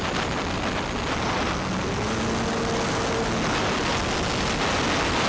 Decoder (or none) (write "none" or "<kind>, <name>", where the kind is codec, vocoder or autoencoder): none